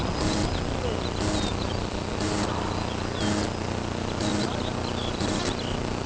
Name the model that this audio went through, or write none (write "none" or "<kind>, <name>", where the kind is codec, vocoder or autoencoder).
none